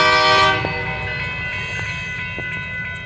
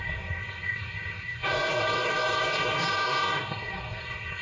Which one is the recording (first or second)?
first